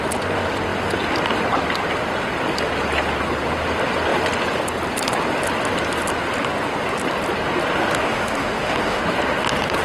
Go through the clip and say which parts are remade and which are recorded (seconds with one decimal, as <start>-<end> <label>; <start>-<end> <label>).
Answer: 0.0-8.1 recorded; 8.1-9.0 remade; 9.0-9.8 recorded